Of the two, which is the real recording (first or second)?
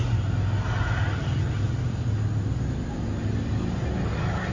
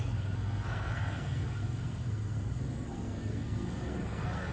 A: first